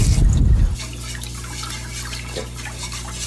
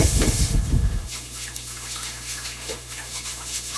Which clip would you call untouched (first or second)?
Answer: first